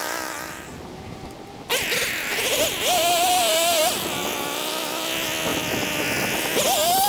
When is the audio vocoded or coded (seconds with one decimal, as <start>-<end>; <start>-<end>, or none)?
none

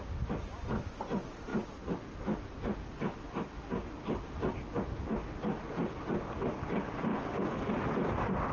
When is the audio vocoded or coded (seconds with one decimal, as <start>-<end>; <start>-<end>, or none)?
7.1-7.7

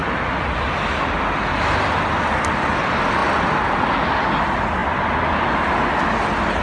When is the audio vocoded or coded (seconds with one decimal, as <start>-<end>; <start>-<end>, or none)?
none

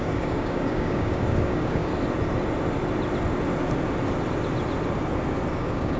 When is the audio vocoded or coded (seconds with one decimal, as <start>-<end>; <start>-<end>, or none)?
0.0-1.9; 5.5-6.0

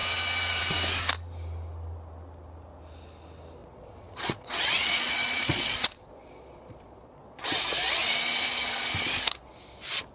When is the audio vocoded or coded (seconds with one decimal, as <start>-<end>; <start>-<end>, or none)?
3.6-7.5

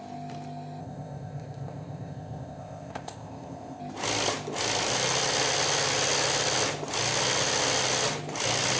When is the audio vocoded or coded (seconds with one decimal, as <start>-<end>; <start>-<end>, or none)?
0.8-3.8

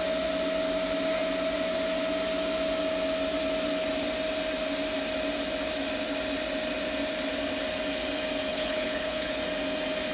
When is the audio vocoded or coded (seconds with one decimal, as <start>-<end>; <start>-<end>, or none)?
8.5-9.4

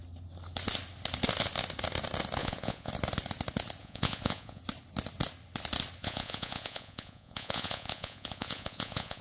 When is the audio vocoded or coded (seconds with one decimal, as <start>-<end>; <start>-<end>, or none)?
2.4-2.9; 3.8-4.6; 6.0-9.2